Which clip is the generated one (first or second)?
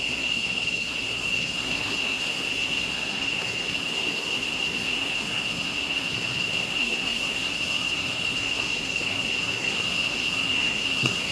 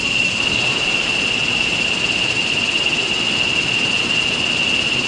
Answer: first